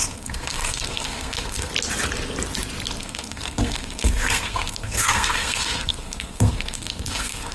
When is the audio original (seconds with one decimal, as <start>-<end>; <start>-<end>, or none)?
1.7-3.0

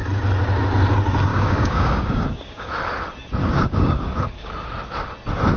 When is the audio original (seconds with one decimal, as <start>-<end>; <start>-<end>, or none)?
0.0-1.3; 2.7-3.4; 4.5-5.6

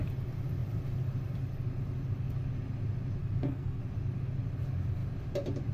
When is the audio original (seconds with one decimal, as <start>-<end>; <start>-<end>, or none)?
0.0-3.2; 3.8-5.7

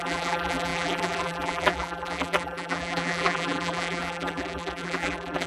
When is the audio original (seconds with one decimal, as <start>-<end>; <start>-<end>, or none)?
none

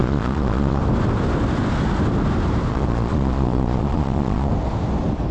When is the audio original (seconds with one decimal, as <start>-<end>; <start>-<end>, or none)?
0.8-2.7; 4.5-5.3

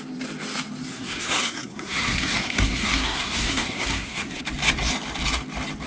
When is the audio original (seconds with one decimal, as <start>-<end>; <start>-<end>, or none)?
0.0-0.9; 4.4-5.9